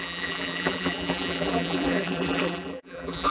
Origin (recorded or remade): remade